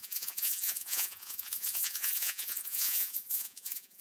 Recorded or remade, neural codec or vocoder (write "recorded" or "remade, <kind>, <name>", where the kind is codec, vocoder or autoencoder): remade, vocoder, Vocos